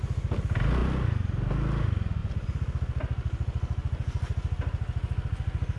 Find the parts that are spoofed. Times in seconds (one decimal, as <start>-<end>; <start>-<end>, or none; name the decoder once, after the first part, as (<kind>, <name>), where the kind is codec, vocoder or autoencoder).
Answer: none